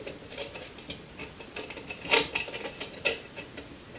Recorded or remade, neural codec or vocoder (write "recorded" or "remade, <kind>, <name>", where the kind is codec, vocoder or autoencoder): recorded